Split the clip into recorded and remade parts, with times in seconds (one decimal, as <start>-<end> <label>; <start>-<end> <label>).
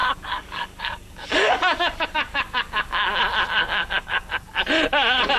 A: 0.0-3.2 remade; 3.2-3.6 recorded; 3.6-4.3 remade; 4.3-5.4 recorded